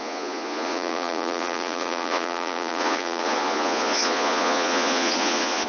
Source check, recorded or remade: remade